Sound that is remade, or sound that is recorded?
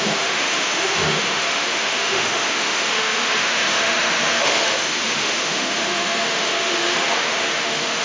remade